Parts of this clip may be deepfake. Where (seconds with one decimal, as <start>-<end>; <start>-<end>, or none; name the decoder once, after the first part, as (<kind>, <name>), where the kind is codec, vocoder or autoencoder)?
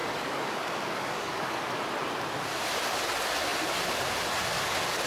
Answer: 0.0-1.6 (codec, DAC)